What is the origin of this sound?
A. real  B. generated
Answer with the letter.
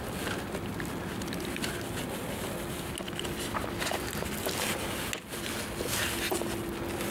A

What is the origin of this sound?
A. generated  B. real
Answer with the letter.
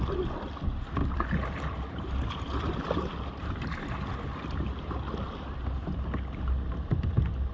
B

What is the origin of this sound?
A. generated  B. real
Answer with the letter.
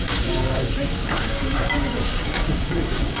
A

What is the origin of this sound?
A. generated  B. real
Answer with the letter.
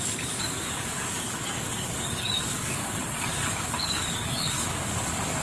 A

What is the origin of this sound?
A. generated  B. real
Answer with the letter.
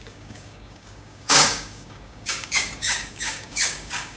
A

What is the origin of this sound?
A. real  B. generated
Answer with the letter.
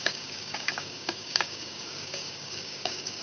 B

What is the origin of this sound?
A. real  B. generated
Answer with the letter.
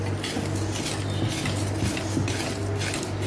A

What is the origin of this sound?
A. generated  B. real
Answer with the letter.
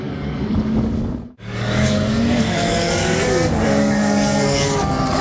A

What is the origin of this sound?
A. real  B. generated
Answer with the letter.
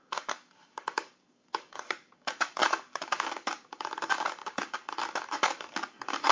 B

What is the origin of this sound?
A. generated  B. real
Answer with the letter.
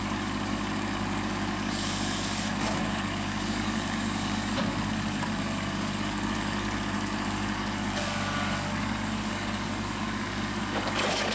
A